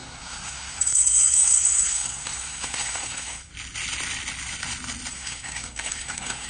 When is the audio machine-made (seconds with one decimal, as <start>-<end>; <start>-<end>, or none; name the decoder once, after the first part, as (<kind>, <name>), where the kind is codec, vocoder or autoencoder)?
0.0-3.5 (codec, SNAC); 5.1-6.5